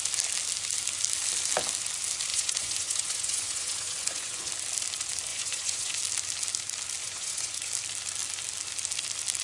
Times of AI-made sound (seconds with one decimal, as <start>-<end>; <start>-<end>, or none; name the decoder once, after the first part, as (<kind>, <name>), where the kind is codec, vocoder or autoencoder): 2.3-4.5 (vocoder, Vocos); 5.3-6.0; 7.0-7.7